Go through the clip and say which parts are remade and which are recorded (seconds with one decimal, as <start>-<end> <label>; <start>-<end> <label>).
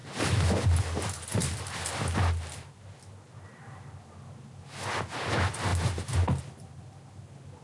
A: 0.0-7.6 recorded